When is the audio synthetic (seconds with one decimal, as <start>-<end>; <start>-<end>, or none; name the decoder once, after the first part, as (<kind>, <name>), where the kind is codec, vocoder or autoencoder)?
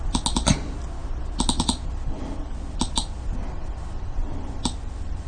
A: none